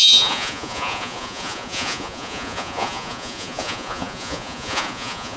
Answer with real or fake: fake